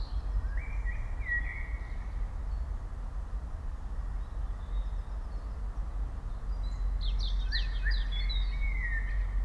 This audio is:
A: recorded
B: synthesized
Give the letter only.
A